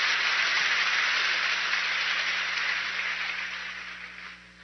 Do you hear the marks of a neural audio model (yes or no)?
no